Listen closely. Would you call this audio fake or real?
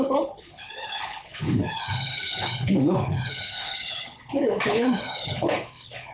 fake